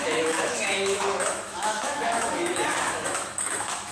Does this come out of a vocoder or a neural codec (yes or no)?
yes